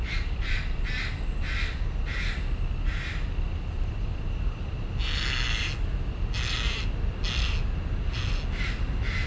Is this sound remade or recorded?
recorded